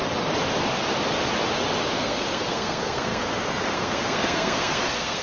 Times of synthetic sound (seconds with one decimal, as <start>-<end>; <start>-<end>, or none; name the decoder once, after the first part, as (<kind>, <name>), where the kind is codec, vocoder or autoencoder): 2.0-5.2 (codec, SNAC)